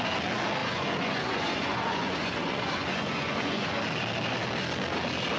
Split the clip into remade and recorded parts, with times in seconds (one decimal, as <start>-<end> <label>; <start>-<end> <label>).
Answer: 0.0-0.6 recorded; 0.6-3.8 remade; 3.8-5.4 recorded